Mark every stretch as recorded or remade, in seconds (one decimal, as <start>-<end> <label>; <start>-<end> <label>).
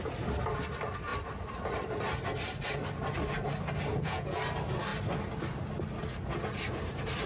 0.0-3.9 recorded; 3.9-4.4 remade; 4.4-7.3 recorded